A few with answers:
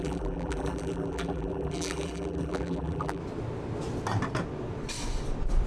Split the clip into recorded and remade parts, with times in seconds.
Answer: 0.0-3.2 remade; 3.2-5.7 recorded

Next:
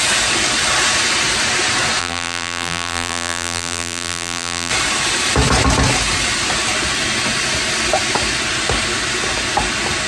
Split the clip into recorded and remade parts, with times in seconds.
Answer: 0.0-2.0 recorded; 2.0-4.7 remade; 4.7-10.1 recorded

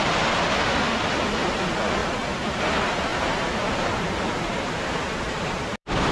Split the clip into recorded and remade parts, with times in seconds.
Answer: 0.0-2.0 recorded; 2.0-2.6 remade; 2.6-3.1 recorded; 3.1-6.1 remade

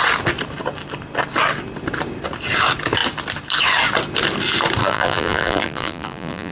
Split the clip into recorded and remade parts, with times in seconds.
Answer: 0.0-4.8 recorded; 4.8-6.5 remade